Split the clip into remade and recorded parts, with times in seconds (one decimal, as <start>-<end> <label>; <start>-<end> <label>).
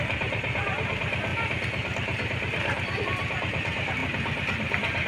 0.0-4.0 remade; 4.0-5.1 recorded